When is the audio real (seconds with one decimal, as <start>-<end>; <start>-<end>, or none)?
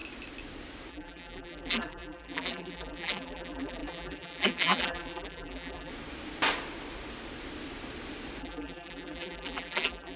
0.0-0.9; 5.9-8.4